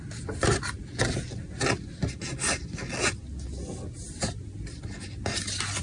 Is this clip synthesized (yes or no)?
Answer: no